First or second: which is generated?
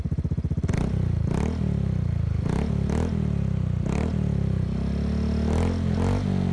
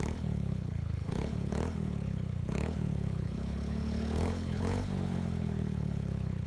second